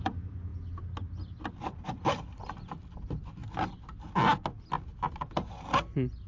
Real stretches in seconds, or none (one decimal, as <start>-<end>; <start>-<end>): 0.5-1.5; 3.4-6.3